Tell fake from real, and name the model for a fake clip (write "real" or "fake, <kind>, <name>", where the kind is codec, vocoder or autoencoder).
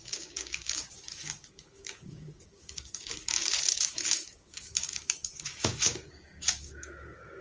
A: fake, codec, DAC